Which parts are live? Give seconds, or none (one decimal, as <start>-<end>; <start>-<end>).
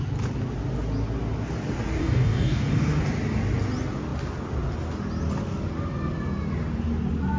0.0-2.0; 3.0-7.4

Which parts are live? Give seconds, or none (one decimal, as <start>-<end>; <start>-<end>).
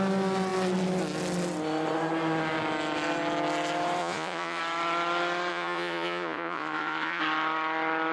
0.0-4.0; 4.6-5.5; 7.2-8.1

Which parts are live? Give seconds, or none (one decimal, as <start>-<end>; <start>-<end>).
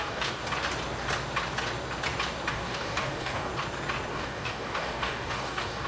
0.4-2.5; 3.5-4.1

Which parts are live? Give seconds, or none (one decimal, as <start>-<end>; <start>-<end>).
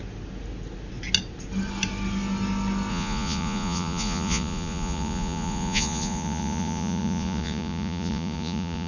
0.0-2.9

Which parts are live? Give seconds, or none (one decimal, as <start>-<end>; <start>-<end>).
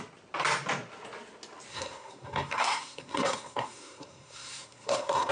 0.0-1.7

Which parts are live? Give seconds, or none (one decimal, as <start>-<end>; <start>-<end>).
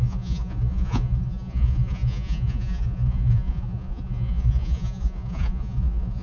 none